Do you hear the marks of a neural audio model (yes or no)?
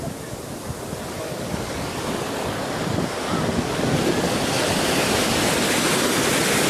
no